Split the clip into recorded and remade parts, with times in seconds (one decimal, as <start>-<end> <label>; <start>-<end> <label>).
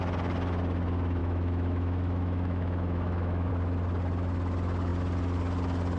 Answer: 0.0-1.2 recorded; 1.2-3.5 remade; 3.5-6.0 recorded